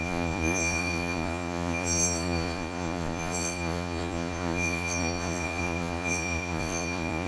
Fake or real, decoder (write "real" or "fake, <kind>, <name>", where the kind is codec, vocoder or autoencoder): fake, vocoder, Vocos